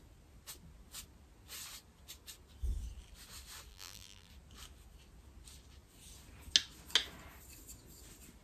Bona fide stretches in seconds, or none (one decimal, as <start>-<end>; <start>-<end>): 0.0-3.7; 4.3-8.4